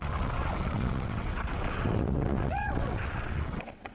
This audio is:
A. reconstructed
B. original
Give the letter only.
A